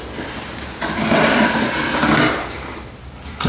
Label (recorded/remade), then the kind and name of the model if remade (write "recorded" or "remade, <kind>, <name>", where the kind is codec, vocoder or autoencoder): recorded